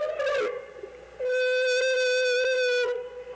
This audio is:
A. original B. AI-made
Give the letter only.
A